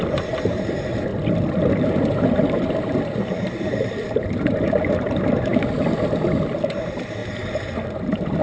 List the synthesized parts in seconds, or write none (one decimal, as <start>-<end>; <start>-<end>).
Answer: 0.0-1.1; 1.7-5.5; 6.7-7.2; 8.0-8.4